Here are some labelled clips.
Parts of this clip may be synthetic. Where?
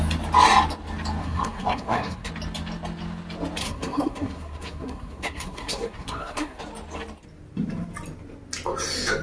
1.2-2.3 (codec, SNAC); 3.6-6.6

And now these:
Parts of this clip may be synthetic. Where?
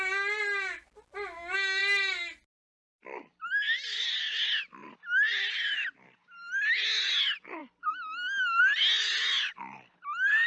none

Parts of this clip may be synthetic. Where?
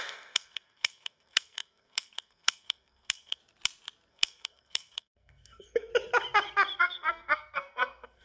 0.0-3.4 (codec, SNAC); 4.1-5.9; 6.8-8.2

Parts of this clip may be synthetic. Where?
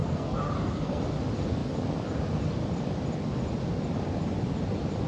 0.0-1.0 (codec, SNAC)